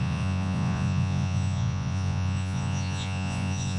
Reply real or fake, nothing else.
fake